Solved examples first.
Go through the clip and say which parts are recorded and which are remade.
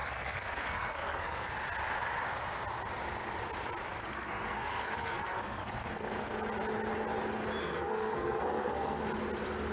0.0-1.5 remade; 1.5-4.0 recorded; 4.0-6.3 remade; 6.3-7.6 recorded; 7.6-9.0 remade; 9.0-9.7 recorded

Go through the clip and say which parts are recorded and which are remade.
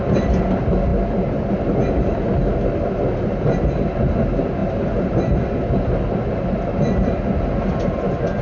0.0-8.4 recorded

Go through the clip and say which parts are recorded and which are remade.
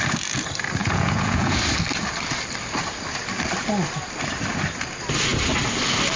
0.0-0.8 recorded; 0.8-1.6 remade; 1.6-6.2 recorded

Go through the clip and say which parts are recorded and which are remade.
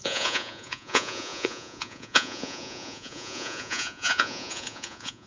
0.0-5.3 remade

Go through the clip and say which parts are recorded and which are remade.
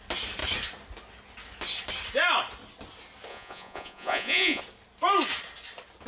0.0-3.3 recorded; 3.3-4.6 remade; 4.6-6.1 recorded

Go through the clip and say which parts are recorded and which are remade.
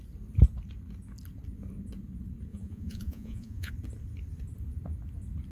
0.0-2.5 recorded; 2.5-3.7 remade; 3.7-5.5 recorded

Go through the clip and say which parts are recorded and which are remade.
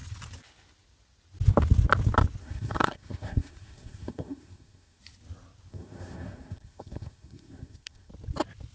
0.0-2.4 recorded; 2.4-5.0 remade; 5.0-5.7 recorded; 5.7-8.1 remade; 8.1-8.7 recorded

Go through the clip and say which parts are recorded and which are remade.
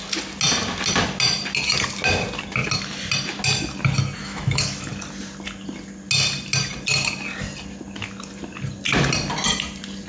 0.0-4.2 recorded; 4.2-4.9 remade; 4.9-10.1 recorded